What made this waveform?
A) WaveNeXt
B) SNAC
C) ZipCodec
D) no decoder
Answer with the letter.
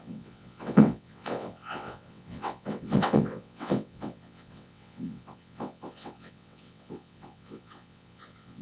A